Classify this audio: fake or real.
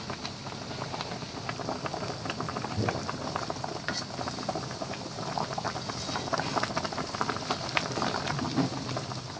real